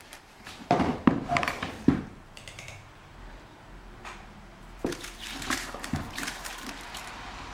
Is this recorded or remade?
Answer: remade